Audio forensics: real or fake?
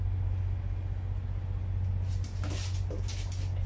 real